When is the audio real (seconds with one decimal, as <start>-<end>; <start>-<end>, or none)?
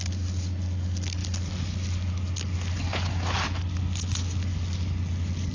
0.0-5.5